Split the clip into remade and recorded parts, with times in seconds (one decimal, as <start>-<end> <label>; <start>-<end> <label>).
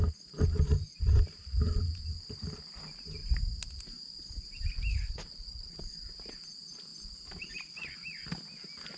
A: 0.0-4.9 recorded; 4.9-5.8 remade; 5.8-9.0 recorded